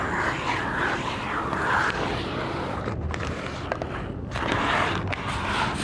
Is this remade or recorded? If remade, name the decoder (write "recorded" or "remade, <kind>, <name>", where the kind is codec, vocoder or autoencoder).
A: recorded